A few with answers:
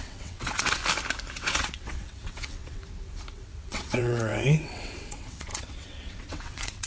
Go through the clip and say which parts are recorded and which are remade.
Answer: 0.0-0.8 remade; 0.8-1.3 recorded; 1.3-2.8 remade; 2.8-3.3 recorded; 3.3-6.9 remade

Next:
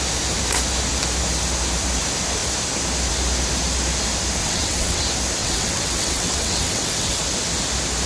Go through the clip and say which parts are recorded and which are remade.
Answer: 0.0-4.4 recorded; 4.4-5.0 remade; 5.0-5.4 recorded; 5.4-7.2 remade; 7.2-8.1 recorded